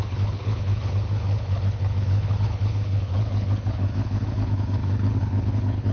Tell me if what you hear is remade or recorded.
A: remade